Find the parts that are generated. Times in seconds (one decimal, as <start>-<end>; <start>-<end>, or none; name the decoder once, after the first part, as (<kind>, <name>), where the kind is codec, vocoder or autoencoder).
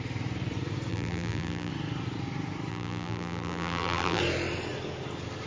0.9-1.7 (vocoder, BigVGAN v2); 2.7-4.2